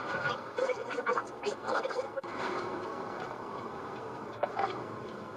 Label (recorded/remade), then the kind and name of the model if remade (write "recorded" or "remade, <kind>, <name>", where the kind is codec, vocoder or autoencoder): remade, codec, SNAC